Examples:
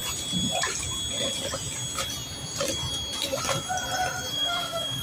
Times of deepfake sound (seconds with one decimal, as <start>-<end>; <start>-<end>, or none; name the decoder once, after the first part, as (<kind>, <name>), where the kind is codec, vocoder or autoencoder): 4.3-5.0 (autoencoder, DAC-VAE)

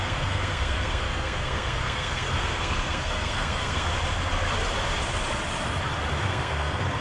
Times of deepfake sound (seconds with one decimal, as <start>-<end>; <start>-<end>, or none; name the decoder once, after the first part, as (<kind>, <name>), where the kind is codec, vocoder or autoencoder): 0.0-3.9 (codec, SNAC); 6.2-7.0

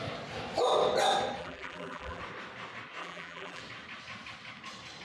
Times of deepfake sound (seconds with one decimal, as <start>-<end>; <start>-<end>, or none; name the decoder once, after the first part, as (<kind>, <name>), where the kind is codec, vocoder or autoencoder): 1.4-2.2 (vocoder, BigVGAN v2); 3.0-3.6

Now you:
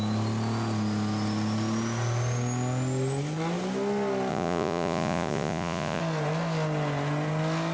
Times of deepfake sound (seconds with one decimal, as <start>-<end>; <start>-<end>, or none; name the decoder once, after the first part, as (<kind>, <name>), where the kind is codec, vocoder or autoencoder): 4.3-6.0 (vocoder, Vocos)

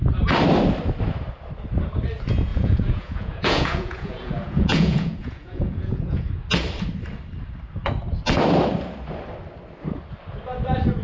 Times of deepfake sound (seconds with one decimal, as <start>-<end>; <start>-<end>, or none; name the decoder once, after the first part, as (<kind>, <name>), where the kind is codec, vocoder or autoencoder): 2.5-6.3 (vocoder, Vocos)